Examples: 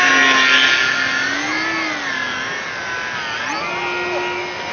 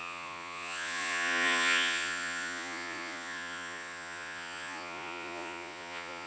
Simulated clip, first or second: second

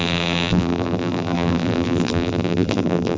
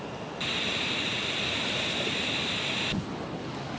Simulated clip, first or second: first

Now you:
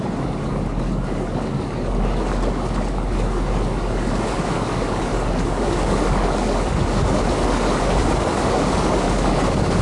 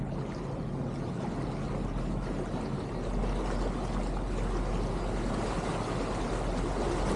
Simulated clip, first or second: first